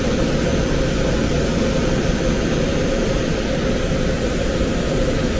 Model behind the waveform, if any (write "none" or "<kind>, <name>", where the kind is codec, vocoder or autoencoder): none